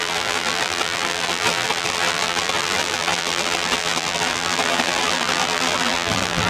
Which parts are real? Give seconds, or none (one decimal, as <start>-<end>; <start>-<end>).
none